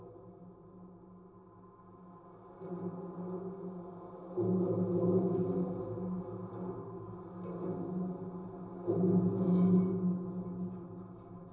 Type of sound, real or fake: real